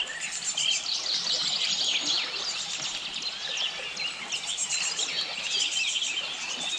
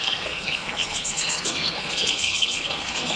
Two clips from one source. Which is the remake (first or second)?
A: second